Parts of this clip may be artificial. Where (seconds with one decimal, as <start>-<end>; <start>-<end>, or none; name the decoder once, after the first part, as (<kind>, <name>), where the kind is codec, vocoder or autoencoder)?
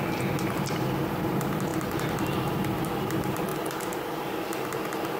none